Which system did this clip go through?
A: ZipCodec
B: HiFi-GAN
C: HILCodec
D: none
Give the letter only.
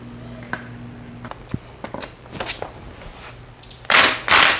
D